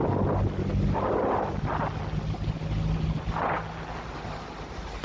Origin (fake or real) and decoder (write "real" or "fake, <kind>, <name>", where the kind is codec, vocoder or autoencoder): real